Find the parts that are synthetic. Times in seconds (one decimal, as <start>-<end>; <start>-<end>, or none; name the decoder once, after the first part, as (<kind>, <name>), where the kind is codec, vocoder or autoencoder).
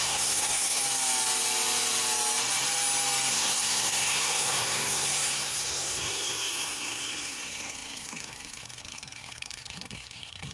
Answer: 0.0-0.8 (codec, SNAC); 3.3-10.5